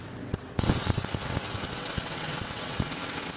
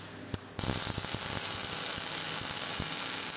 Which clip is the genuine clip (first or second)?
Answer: second